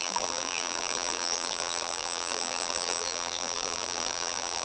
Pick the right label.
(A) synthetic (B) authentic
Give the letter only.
A